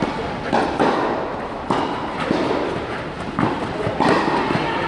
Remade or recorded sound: recorded